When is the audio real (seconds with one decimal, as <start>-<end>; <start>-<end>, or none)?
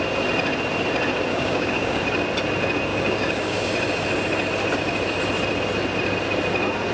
0.0-1.3; 2.0-2.9; 3.7-6.9